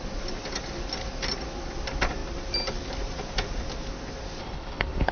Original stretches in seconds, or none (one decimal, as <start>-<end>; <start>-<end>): 0.0-4.4